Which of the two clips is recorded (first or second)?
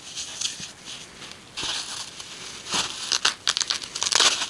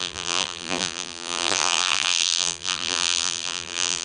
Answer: first